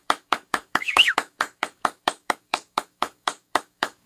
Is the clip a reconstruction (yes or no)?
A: yes